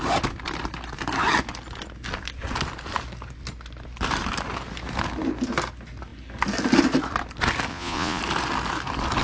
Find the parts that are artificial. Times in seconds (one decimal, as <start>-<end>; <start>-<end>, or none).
7.7-8.2